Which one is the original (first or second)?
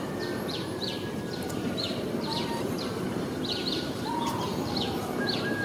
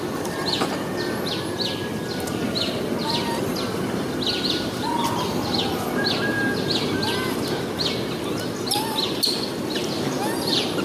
second